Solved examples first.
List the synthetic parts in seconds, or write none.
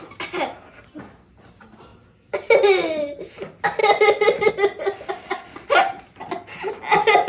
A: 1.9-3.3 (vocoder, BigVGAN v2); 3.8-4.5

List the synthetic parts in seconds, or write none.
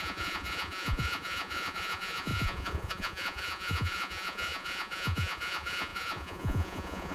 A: 0.0-7.1 (vocoder, Vocos)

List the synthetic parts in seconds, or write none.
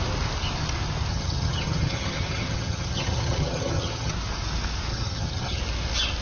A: 1.1-4.1 (vocoder, HiFi-GAN); 4.9-5.6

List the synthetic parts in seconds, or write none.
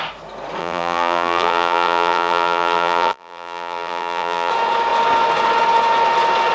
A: 0.6-4.5 (vocoder, BigVGAN v2)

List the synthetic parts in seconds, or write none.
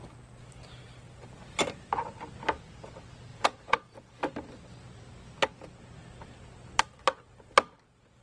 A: 3.3-4.1 (vocoder, Vocos)